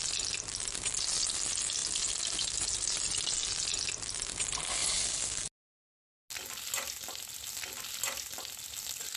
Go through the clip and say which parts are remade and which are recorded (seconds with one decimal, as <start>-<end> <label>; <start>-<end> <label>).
0.0-9.2 recorded